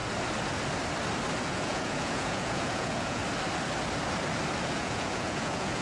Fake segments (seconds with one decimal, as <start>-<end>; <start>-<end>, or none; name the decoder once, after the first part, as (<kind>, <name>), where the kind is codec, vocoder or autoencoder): 1.4-3.2 (vocoder, Vocos); 4.7-5.8